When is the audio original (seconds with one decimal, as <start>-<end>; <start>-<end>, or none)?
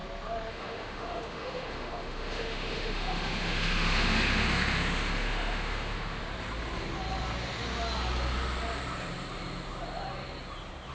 0.0-0.5; 6.2-10.9